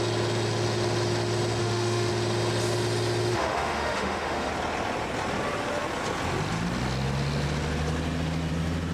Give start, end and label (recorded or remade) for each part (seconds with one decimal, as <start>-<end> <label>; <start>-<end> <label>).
0.0-1.6 recorded; 1.6-2.1 remade; 2.1-3.3 recorded; 3.3-4.5 remade; 4.5-8.9 recorded